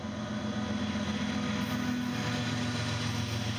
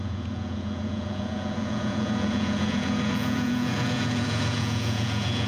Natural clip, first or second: first